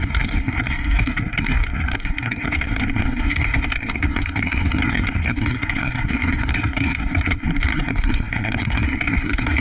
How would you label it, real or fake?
fake